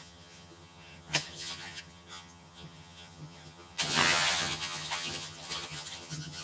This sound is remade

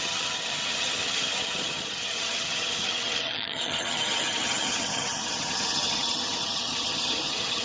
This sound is remade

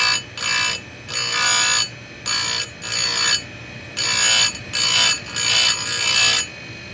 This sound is recorded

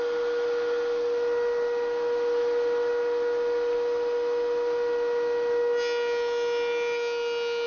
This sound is recorded